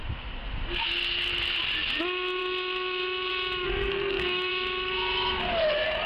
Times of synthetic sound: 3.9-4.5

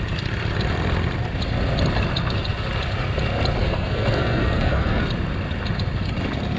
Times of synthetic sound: 3.6-5.0

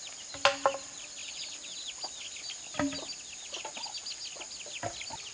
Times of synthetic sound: none

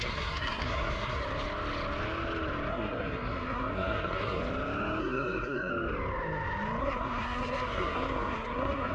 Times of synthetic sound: 0.0-1.2; 2.7-4.4; 5.0-5.7; 6.8-8.9

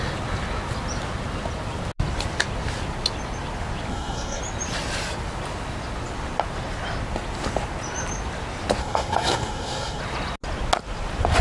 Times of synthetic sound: 3.9-4.4; 8.8-10.0